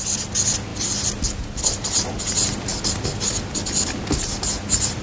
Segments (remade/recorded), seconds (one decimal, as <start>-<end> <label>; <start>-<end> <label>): 0.0-5.0 recorded

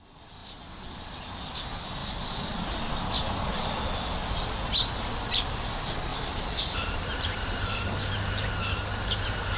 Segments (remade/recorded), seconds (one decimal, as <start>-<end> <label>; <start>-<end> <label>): 0.0-2.0 recorded; 2.0-2.8 remade; 2.8-6.1 recorded; 6.1-7.8 remade; 7.8-9.6 recorded